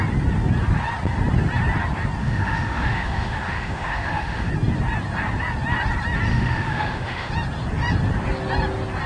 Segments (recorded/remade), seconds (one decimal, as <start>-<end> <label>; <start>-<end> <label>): 0.0-2.2 recorded; 2.2-4.5 remade; 4.5-6.3 recorded; 6.3-7.3 remade; 7.3-9.1 recorded